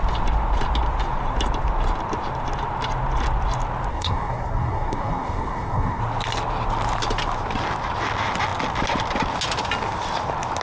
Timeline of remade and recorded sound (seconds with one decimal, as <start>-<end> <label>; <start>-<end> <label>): 0.0-3.9 recorded; 3.9-6.0 remade; 6.0-10.6 recorded